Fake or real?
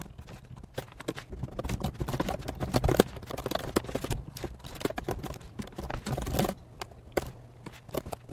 real